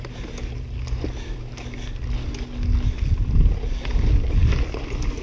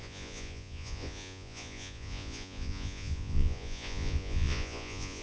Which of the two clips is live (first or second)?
first